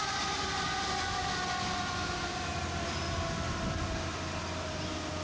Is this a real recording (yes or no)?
yes